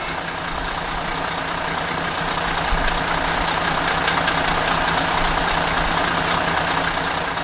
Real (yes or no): yes